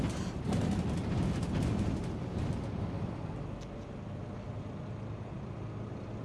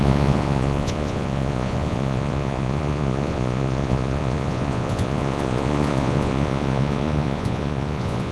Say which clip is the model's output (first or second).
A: second